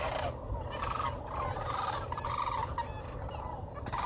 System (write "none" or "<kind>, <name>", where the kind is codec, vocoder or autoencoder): none